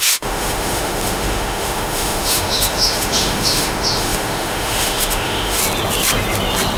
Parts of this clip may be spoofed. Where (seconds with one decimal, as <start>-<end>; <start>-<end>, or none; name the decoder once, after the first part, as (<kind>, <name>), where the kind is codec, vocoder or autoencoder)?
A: 0.0-5.6 (autoencoder, DAC-VAE)